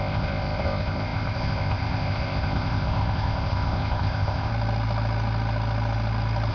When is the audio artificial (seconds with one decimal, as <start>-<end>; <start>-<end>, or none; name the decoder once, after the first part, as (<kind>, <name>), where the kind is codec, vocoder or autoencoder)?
0.0-4.5 (codec, ZipCodec)